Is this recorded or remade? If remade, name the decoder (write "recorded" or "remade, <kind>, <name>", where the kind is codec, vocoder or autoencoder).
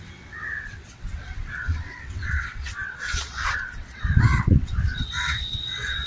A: remade, vocoder, WaveNeXt